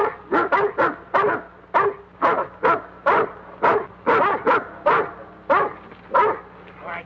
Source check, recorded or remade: recorded